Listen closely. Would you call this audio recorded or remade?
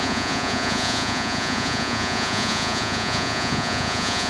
remade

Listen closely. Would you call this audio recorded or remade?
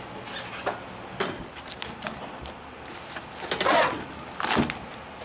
recorded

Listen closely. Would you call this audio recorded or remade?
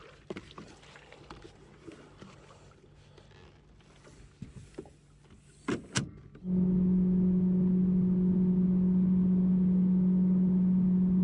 recorded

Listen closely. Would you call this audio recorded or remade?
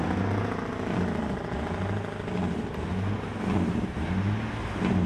recorded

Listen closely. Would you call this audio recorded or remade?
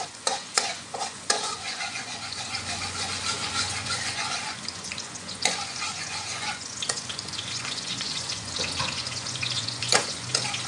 remade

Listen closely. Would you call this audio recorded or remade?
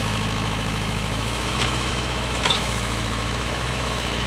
remade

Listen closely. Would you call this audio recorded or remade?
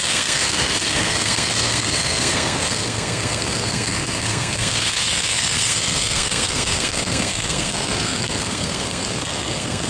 remade